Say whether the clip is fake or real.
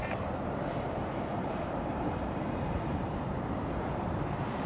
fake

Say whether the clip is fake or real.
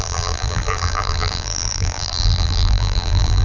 fake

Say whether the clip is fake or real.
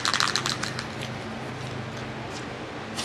real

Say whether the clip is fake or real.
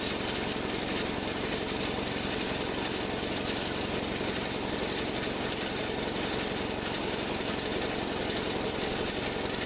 real